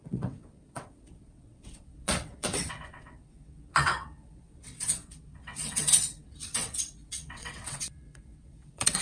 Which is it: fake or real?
fake